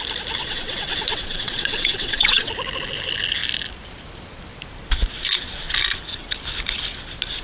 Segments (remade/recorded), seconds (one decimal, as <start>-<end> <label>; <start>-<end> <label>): 0.0-0.4 recorded; 0.4-2.5 remade; 2.5-7.4 recorded